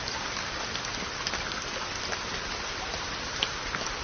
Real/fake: real